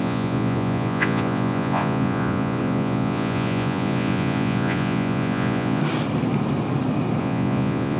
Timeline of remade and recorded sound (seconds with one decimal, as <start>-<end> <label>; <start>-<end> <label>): 0.0-5.8 remade; 5.8-7.2 recorded; 7.2-8.0 remade

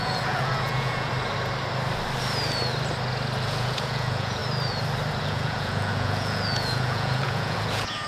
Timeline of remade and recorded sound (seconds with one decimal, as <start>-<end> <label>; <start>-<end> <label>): 0.0-1.1 remade; 1.1-3.4 recorded; 3.4-4.4 remade; 4.4-5.2 recorded; 5.2-8.1 remade